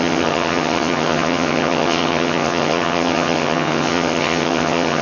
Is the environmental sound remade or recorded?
remade